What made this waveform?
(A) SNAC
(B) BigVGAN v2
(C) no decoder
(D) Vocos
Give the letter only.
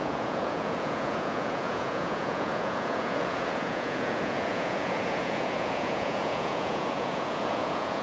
D